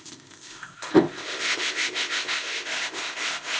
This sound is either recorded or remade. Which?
remade